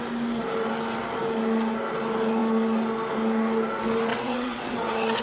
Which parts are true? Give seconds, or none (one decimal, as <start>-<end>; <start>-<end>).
0.0-4.1